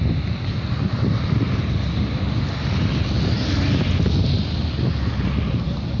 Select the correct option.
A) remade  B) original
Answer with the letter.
B